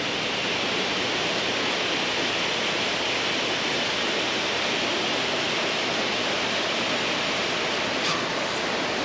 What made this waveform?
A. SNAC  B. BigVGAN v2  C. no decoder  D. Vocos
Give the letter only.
C